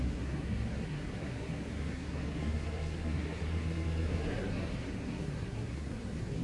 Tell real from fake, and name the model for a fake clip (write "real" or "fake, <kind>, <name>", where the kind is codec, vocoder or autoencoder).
fake, codec, SNAC